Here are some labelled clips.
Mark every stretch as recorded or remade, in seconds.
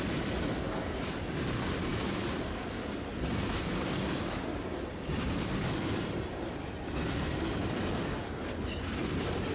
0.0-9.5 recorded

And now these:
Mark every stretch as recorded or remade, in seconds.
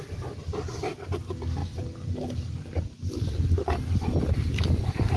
0.0-5.2 recorded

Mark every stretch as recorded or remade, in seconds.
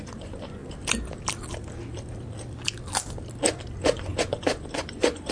0.0-0.6 remade; 0.6-3.8 recorded; 3.8-5.3 remade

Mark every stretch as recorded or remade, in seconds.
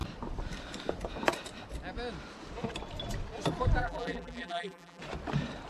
0.0-3.8 recorded; 3.8-5.0 remade; 5.0-5.7 recorded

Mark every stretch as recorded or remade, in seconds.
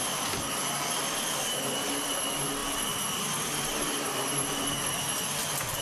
0.0-2.6 recorded; 2.6-5.0 remade; 5.0-5.8 recorded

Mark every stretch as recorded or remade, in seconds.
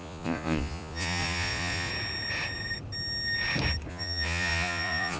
0.0-1.9 remade; 1.9-3.9 recorded; 3.9-5.2 remade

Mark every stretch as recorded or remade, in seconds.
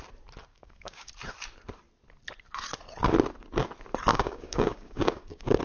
0.0-0.5 recorded; 0.5-1.1 remade; 1.1-4.1 recorded; 4.1-5.6 remade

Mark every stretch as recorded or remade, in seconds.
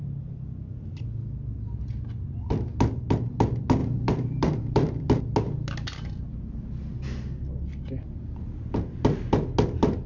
0.0-3.8 recorded; 3.8-5.2 remade; 5.2-6.3 recorded; 6.3-7.3 remade; 7.3-10.1 recorded